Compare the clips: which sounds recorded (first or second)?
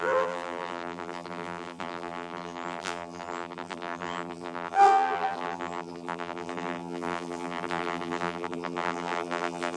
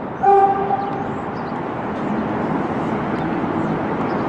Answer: second